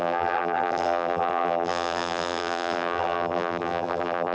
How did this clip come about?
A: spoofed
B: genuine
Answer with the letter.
A